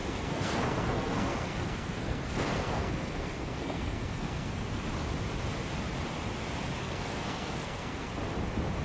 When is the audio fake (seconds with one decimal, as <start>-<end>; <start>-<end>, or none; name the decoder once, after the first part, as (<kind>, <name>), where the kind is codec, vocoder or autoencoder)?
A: 0.0-4.9 (codec, SNAC); 6.8-8.1